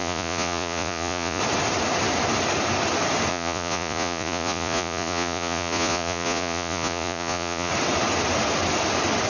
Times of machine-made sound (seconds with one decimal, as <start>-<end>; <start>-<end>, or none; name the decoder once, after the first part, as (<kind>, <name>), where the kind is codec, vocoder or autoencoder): 0.0-1.4 (vocoder, Vocos); 3.3-7.7